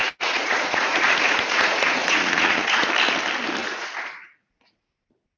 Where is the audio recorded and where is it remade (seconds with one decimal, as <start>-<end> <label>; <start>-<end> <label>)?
0.0-2.9 remade; 2.9-3.6 recorded; 3.6-4.9 remade; 4.9-5.4 recorded